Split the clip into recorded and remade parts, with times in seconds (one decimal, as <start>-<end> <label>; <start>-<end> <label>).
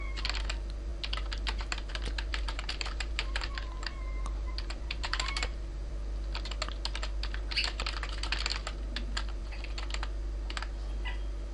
0.0-2.3 recorded; 2.3-5.9 remade; 5.9-11.5 recorded